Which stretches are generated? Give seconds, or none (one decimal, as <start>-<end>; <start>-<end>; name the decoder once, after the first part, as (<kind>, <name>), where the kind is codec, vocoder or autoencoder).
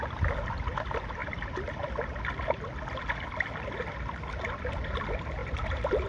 5.4-6.1 (vocoder, BigVGAN v2)